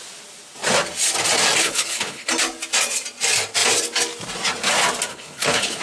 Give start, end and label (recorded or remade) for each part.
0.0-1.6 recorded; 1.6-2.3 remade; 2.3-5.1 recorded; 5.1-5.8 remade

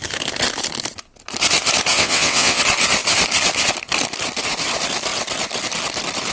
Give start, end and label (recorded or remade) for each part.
0.0-1.9 recorded; 1.9-2.6 remade; 2.6-6.3 recorded